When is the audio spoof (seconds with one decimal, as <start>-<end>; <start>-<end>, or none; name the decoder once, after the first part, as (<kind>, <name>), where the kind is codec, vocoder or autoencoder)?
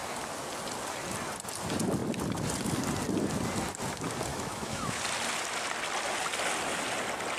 4.3-5.0 (autoencoder, DAC-VAE)